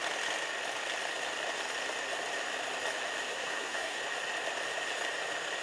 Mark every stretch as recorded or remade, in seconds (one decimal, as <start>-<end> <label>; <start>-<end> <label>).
0.0-3.3 recorded; 3.3-4.0 remade; 4.0-5.6 recorded